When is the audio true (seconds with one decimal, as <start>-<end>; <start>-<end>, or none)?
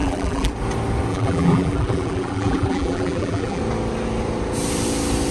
0.5-1.1; 3.6-5.3